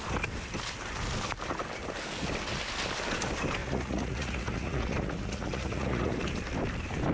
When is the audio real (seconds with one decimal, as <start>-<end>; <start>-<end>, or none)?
0.0-3.6; 6.2-7.1